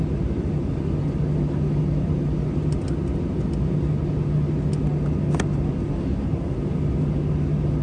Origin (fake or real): real